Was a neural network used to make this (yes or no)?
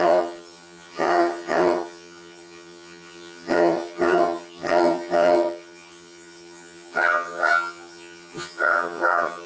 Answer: yes